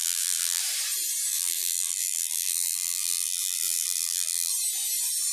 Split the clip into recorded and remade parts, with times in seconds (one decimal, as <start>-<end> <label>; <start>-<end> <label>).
0.0-0.6 remade; 0.6-1.3 recorded; 1.3-4.5 remade; 4.5-5.3 recorded